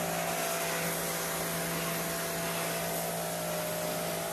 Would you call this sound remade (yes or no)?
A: no